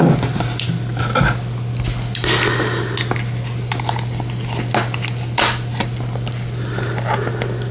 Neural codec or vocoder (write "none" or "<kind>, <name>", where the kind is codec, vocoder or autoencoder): none